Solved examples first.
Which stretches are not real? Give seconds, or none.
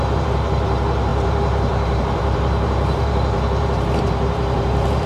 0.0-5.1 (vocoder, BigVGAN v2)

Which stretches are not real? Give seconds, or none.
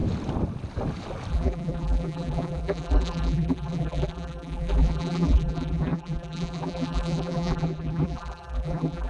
1.3-9.1 (vocoder, BigVGAN v2)